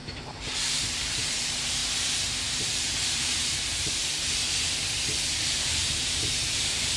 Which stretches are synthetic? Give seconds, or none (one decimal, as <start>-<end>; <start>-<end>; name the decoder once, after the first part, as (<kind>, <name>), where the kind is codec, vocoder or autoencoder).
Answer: 0.0-1.8 (vocoder, BigVGAN v2); 2.9-4.0; 5.4-7.0